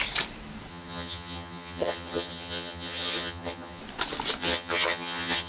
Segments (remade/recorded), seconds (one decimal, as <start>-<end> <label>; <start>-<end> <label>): 0.0-0.7 recorded; 0.7-3.8 remade; 3.8-4.4 recorded; 4.4-5.5 remade